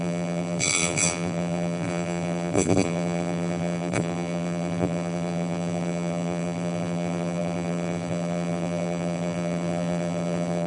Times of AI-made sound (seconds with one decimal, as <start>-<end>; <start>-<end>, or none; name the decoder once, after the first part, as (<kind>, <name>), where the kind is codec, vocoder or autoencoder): 0.0-10.7 (vocoder, BigVGAN v2)